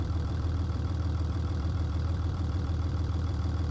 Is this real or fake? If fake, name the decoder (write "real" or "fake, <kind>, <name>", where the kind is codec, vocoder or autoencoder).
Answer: fake, vocoder, BigVGAN v2